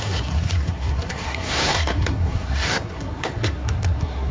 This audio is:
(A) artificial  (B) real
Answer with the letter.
A